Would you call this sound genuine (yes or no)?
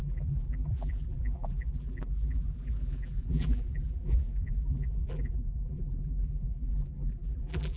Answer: no